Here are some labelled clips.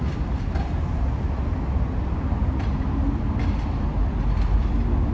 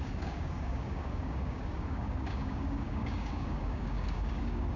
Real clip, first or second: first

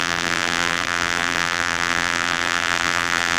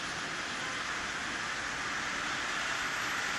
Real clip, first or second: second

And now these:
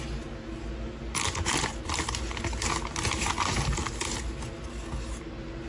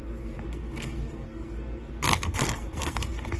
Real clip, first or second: first